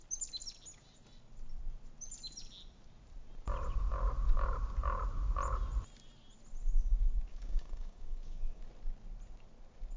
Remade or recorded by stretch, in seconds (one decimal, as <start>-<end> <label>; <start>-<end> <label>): 0.0-7.3 recorded; 7.3-8.6 remade; 8.6-10.0 recorded